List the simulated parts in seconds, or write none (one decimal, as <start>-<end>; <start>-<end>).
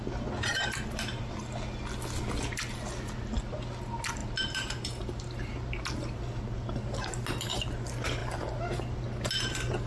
4.2-5.5